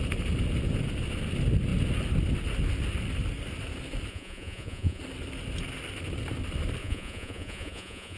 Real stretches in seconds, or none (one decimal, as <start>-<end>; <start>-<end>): 0.0-4.1; 5.0-6.8